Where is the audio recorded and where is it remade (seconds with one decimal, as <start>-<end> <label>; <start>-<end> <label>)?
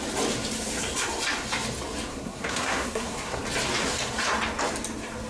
0.0-2.1 recorded; 2.1-3.4 remade; 3.4-5.3 recorded